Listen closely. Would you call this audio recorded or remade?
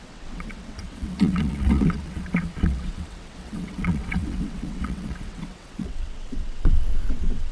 remade